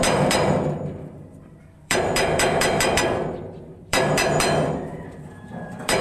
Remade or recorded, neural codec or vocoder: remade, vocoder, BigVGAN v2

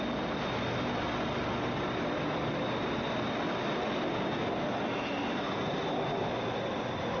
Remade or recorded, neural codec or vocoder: recorded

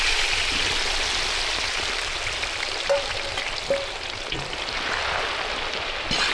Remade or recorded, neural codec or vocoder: recorded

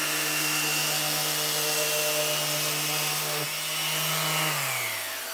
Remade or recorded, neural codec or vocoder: recorded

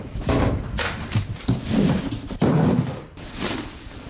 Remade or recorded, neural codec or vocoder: remade, vocoder, BigVGAN v2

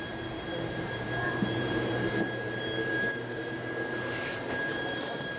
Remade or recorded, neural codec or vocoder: remade, vocoder, BigVGAN v2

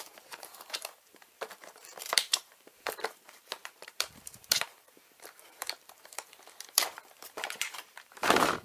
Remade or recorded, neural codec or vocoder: remade, vocoder, BigVGAN v2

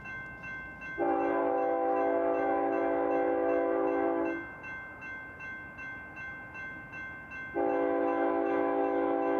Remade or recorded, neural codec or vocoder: recorded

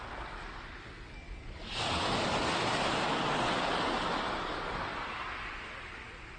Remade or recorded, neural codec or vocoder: recorded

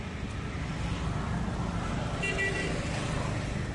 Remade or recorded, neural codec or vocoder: recorded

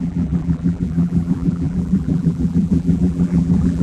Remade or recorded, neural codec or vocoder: remade, vocoder, BigVGAN v2